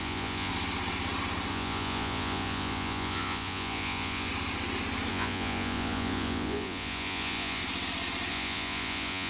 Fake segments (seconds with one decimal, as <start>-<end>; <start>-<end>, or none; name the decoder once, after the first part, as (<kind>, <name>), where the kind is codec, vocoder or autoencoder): 0.0-0.5 (vocoder, Vocos); 1.5-4.3; 5.1-7.6; 8.3-9.3